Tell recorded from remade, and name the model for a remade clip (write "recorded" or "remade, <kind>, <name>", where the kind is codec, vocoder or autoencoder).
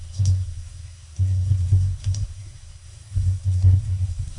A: remade, codec, SNAC